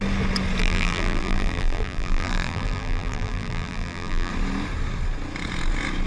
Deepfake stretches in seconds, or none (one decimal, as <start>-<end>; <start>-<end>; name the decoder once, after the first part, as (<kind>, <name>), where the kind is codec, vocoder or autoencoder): 0.6-4.3 (vocoder, BigVGAN v2)